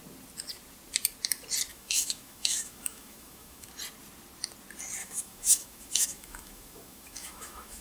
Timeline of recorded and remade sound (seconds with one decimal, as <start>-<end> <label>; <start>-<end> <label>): 0.0-1.7 recorded; 1.7-3.7 remade; 3.7-5.0 recorded; 5.0-7.8 remade